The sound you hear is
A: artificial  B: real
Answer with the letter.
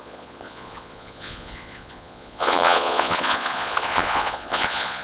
A